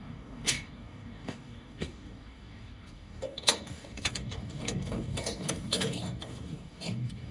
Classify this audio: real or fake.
fake